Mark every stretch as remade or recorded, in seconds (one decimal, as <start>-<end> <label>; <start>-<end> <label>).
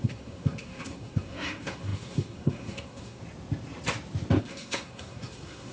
0.0-3.2 remade; 3.2-4.4 recorded; 4.4-5.7 remade